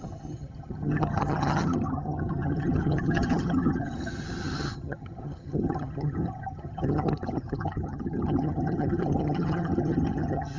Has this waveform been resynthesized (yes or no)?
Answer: yes